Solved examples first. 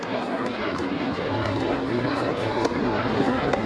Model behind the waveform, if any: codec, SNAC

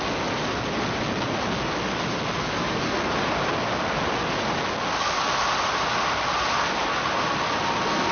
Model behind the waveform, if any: none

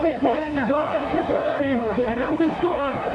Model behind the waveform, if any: codec, SNAC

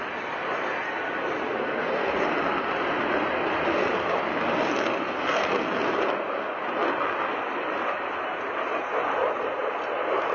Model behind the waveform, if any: none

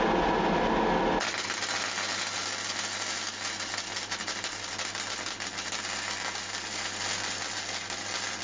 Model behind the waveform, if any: none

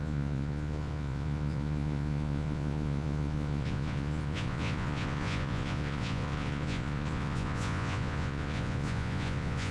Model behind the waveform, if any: vocoder, Vocos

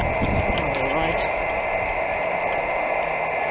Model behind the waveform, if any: none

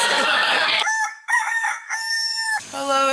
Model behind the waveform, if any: codec, DAC